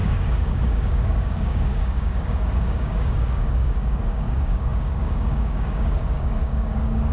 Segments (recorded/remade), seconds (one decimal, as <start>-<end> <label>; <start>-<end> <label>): 0.0-7.1 remade